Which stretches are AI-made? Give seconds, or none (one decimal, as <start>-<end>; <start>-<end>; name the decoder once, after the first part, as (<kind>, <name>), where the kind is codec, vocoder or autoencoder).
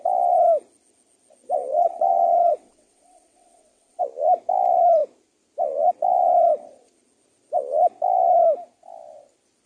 1.7-4.0 (vocoder, WaveNeXt)